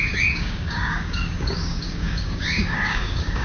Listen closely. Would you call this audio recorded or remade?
remade